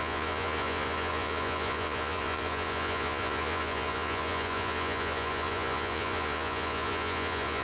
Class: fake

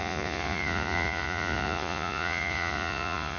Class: fake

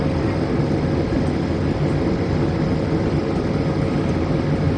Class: real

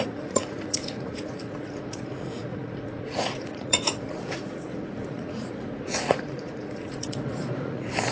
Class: fake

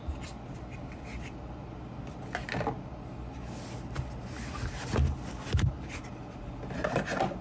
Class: real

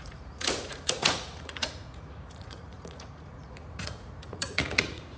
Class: fake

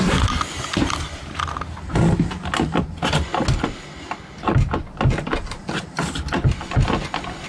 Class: real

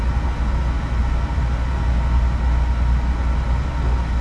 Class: real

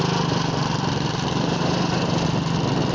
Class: real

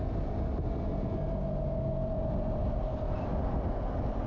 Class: real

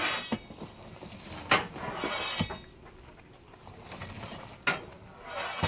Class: real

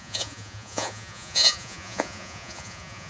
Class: fake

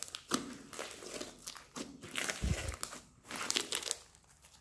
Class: real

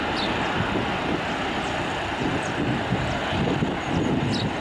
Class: real